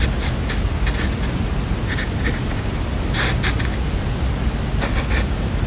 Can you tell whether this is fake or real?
real